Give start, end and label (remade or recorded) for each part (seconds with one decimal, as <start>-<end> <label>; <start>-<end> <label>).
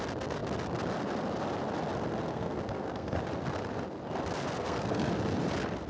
0.0-2.2 recorded; 2.2-3.2 remade; 3.2-4.6 recorded; 4.6-5.2 remade; 5.2-5.9 recorded